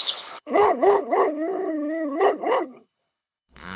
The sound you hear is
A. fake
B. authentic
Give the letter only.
A